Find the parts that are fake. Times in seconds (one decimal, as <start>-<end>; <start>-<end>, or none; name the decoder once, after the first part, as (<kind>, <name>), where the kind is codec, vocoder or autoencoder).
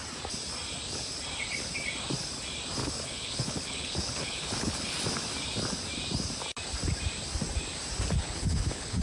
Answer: 2.8-4.9 (codec, HILCodec); 8.2-9.0